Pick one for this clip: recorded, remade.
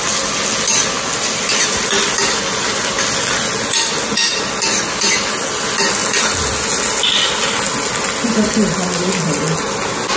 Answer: recorded